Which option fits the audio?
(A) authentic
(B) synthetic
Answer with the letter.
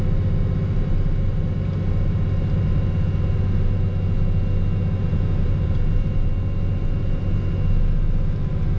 A